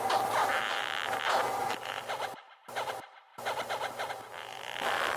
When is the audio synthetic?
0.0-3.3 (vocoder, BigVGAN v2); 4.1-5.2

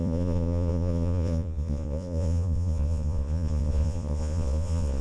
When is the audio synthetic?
0.0-5.0 (vocoder, Vocos)